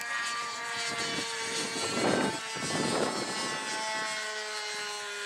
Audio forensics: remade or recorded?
recorded